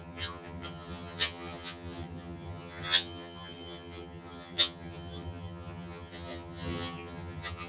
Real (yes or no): no